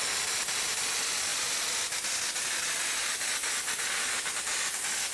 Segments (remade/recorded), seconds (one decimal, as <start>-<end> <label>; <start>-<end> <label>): 0.0-5.1 recorded